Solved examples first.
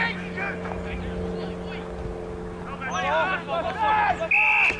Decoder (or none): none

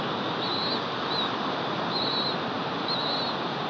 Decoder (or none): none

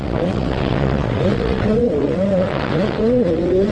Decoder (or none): vocoder, WaveNeXt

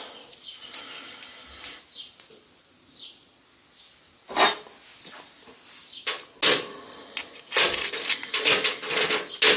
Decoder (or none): none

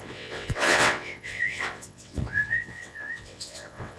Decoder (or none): vocoder, WaveNeXt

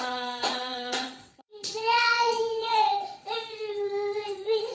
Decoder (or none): vocoder, WaveNeXt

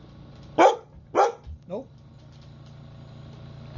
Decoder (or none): none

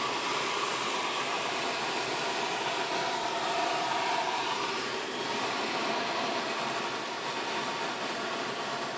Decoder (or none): none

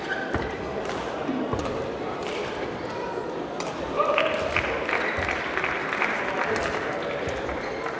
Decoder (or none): none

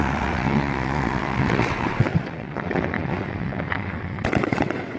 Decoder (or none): vocoder, WaveNeXt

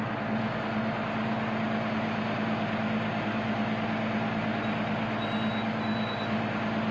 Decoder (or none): none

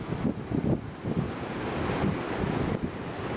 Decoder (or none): none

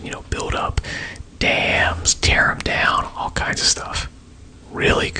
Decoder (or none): none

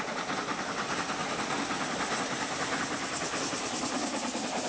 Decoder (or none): none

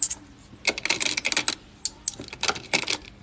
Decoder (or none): none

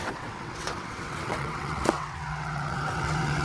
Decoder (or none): vocoder, WaveNeXt